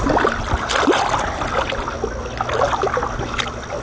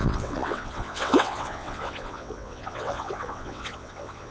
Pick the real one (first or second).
first